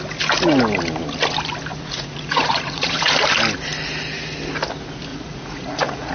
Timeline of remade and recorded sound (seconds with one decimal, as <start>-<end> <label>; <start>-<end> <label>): 0.0-1.7 recorded; 1.7-3.1 remade; 3.1-5.1 recorded; 5.1-6.1 remade